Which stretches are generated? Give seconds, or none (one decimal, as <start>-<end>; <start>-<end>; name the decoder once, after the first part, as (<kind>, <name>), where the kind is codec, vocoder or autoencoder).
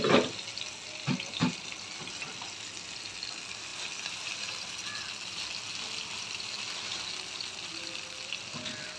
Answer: none